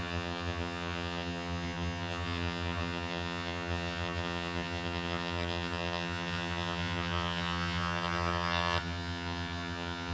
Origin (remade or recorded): remade